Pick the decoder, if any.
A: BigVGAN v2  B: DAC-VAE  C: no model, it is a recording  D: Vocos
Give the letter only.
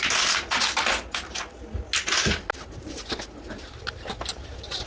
C